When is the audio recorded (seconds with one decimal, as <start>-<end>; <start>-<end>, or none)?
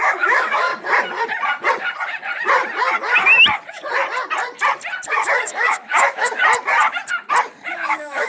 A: 0.7-5.1; 6.4-7.7